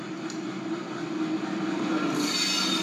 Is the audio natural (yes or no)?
yes